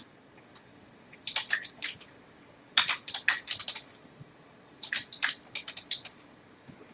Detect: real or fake real